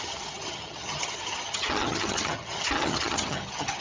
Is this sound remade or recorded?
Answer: remade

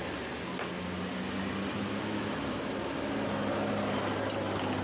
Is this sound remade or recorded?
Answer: recorded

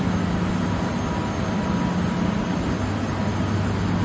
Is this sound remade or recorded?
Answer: recorded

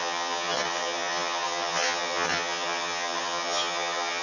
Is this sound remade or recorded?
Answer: remade